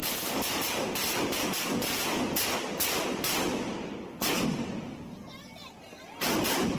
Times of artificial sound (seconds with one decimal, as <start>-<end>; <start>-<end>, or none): none